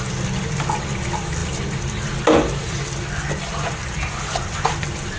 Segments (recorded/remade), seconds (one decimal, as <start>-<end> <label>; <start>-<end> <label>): 0.0-5.2 recorded